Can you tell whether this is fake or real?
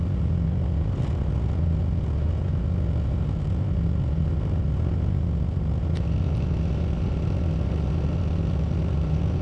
real